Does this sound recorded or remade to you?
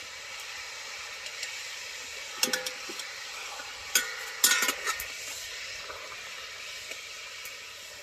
recorded